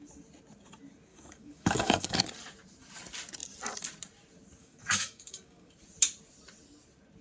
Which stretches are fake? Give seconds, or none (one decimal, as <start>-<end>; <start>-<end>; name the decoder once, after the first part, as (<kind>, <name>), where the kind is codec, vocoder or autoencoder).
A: 1.1-2.2 (codec, DAC); 4.6-5.7